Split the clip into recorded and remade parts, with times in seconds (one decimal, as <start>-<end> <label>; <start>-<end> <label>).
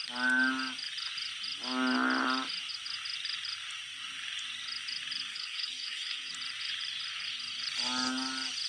0.0-5.3 recorded; 5.3-6.3 remade; 6.3-8.7 recorded